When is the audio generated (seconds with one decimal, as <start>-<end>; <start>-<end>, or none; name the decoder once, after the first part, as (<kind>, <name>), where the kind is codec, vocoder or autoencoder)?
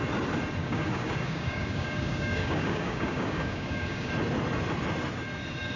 0.6-4.1 (codec, DAC)